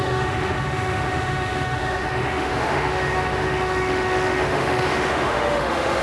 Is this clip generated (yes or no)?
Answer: yes